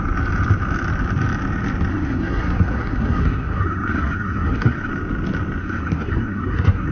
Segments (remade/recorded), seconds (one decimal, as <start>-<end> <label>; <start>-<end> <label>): 0.0-1.9 recorded; 1.9-4.9 remade; 4.9-5.6 recorded; 5.6-6.9 remade